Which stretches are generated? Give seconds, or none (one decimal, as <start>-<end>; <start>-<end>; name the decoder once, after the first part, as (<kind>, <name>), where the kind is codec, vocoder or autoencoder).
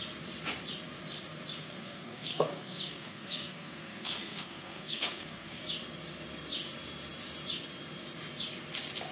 1.6-5.6 (codec, SNAC)